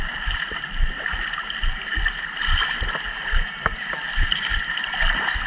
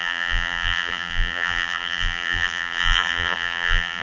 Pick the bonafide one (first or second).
first